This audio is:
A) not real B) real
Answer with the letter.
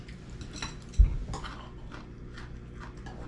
B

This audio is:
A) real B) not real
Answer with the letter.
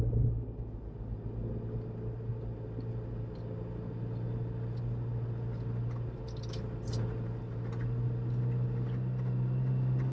A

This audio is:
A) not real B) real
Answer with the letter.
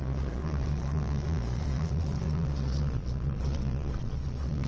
A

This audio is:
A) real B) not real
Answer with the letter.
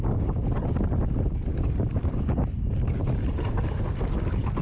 A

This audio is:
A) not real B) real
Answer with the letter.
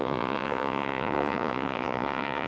A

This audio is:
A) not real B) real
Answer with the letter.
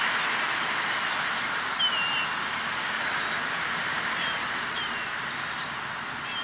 B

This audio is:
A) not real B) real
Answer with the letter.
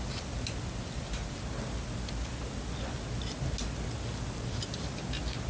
B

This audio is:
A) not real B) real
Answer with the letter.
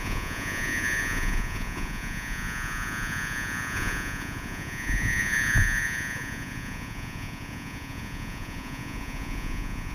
A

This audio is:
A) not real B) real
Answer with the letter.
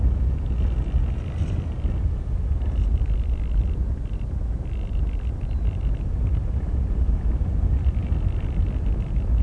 B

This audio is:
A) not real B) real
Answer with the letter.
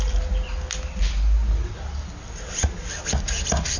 B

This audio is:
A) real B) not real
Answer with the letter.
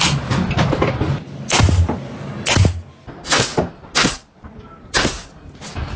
A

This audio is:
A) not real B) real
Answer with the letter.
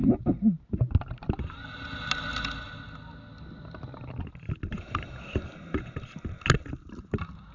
B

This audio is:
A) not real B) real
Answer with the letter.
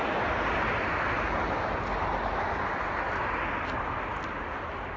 B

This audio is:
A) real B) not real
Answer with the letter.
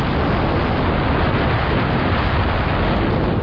A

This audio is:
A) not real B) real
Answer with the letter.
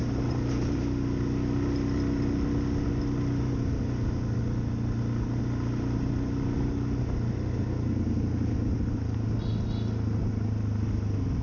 B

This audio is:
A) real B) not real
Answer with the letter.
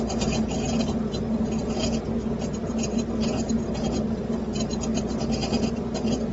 A